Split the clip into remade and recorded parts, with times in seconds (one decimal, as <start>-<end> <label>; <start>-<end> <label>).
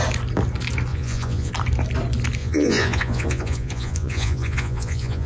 0.0-0.9 recorded; 0.9-1.5 remade; 1.5-2.4 recorded; 2.4-5.3 remade